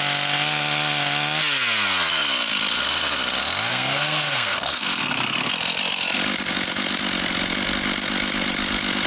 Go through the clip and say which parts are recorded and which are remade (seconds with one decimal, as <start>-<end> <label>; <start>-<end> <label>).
0.0-3.7 recorded; 3.7-5.5 remade; 5.5-9.1 recorded